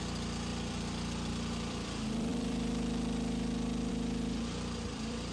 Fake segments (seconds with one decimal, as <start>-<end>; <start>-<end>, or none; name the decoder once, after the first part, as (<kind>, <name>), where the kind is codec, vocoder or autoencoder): 0.0-5.3 (vocoder, BigVGAN v2)